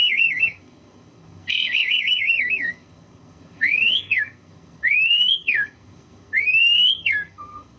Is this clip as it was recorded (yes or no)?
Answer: no